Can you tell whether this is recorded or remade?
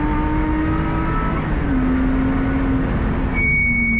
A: recorded